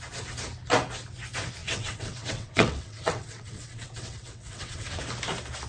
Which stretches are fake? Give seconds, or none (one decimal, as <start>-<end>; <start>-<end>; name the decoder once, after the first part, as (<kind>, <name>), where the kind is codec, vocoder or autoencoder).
1.6-5.0 (vocoder, WaveNeXt)